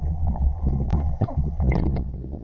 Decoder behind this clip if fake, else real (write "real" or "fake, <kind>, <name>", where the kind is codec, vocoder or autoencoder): fake, vocoder, Vocos